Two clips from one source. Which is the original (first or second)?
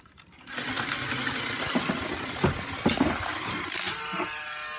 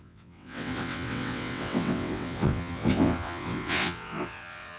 first